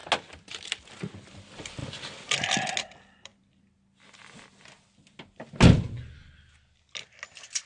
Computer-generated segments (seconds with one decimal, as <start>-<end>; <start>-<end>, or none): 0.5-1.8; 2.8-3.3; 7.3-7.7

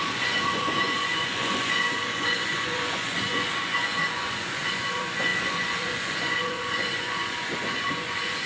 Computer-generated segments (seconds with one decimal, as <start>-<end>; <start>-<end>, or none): 0.0-8.5

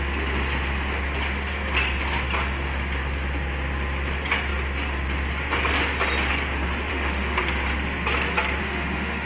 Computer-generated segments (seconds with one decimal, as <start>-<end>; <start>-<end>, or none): 6.9-7.4; 8.6-9.3

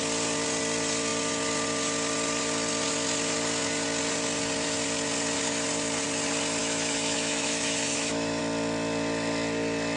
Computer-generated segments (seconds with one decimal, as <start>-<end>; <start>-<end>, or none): 6.6-8.4